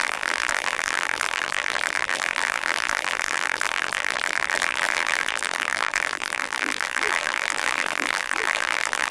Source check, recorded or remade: remade